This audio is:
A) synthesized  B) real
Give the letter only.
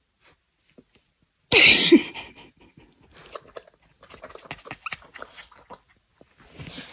B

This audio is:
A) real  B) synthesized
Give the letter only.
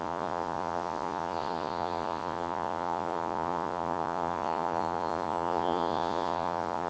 B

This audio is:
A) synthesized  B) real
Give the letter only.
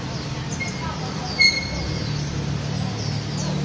B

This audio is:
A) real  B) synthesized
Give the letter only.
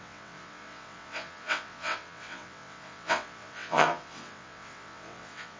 B